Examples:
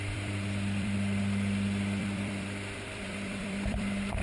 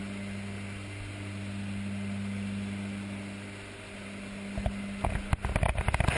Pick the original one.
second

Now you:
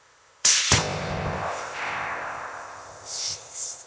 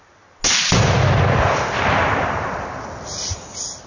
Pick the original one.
second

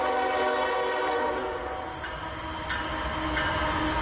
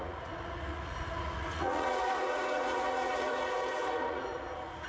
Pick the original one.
first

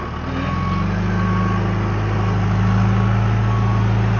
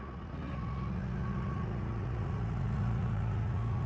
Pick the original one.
first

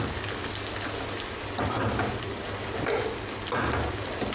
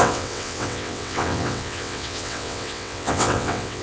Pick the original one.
first